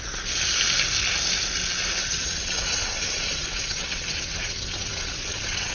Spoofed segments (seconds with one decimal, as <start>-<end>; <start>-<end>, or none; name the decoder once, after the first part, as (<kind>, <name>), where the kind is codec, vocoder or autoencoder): 2.0-5.7 (vocoder, WaveNeXt)